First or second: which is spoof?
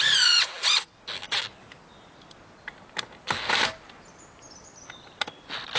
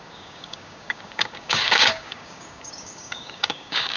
second